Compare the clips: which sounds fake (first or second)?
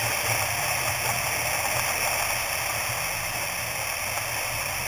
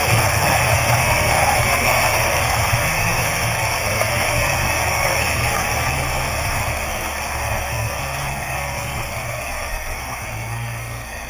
second